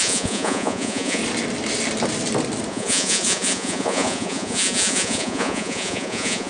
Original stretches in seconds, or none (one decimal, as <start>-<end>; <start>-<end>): 1.2-2.7